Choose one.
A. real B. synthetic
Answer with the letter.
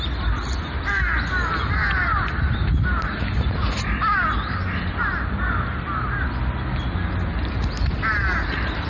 A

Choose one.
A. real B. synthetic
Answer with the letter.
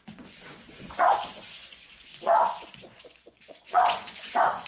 B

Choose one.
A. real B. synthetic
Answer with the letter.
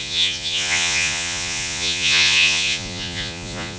B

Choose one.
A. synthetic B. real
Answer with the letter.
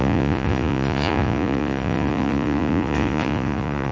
A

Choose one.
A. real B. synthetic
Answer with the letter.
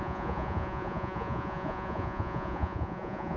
B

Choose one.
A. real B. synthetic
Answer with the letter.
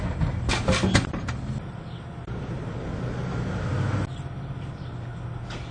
A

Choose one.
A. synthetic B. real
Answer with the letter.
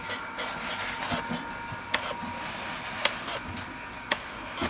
B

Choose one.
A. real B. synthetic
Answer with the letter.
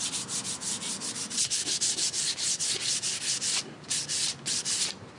A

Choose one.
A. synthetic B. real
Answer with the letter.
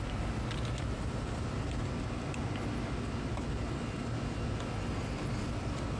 B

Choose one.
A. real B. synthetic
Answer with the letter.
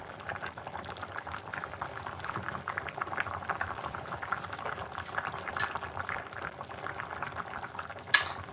A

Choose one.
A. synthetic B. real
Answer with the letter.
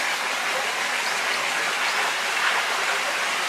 B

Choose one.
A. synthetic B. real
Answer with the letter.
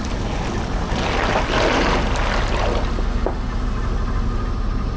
B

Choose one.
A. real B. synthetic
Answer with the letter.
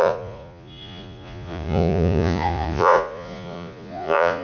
B